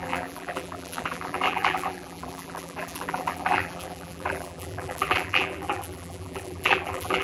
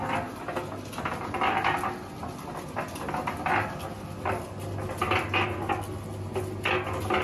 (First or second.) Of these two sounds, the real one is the second